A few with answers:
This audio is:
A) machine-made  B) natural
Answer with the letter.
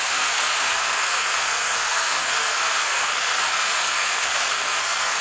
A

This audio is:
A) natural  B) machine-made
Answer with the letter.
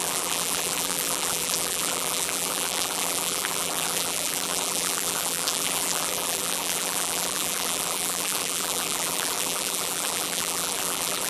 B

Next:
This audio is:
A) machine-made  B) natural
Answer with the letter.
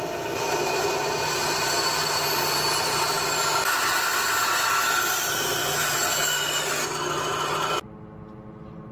B